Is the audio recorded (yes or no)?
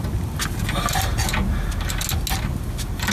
yes